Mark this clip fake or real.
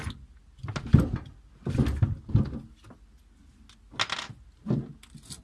real